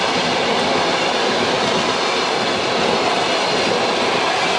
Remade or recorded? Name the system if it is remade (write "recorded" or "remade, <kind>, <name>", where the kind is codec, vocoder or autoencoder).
recorded